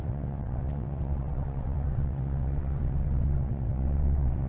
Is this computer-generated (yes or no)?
yes